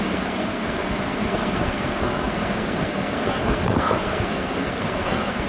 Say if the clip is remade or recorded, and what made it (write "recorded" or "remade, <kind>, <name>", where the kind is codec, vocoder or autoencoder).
remade, codec, SNAC